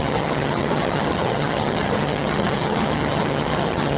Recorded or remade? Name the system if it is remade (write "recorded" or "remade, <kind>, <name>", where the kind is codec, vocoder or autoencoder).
remade, vocoder, HiFi-GAN